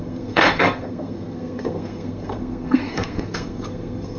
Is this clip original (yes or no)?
no